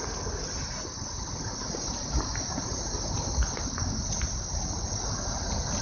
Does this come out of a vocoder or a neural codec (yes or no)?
no